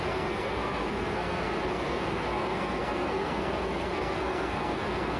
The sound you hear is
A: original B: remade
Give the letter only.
B